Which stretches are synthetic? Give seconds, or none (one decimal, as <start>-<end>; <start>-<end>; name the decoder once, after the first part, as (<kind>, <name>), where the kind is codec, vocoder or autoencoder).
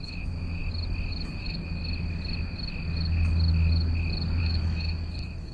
0.0-0.6 (autoencoder, DAC-VAE); 1.3-1.8; 4.4-5.5